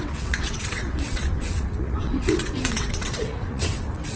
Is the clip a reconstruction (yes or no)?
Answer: yes